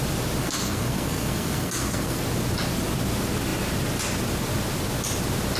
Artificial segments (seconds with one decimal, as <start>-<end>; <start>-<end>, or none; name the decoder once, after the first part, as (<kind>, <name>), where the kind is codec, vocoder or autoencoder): 0.4-2.2 (codec, SNAC)